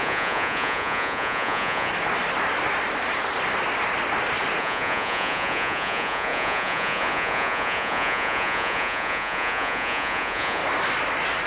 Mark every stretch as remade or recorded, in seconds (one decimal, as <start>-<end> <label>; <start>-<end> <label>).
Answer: 0.0-1.9 remade; 1.9-4.6 recorded; 4.6-10.6 remade; 10.6-11.5 recorded